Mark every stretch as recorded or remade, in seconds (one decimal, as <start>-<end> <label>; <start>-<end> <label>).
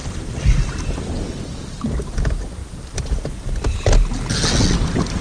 0.0-5.2 recorded